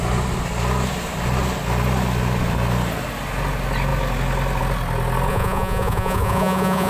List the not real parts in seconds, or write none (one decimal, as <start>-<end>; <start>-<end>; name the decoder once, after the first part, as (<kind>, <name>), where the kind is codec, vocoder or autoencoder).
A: 5.3-6.9 (vocoder, Vocos)